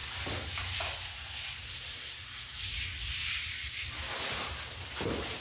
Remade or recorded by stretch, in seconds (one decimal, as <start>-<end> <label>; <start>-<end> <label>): 0.0-5.4 recorded